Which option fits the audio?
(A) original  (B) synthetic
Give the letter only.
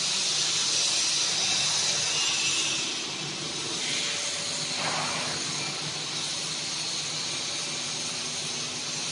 A